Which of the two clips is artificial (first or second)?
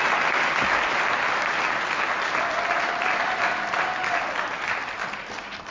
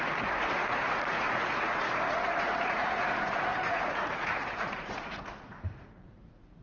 second